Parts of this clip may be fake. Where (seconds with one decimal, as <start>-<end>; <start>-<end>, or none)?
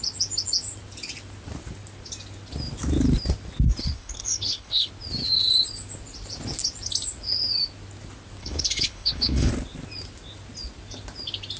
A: 3.8-4.9; 8.4-9.5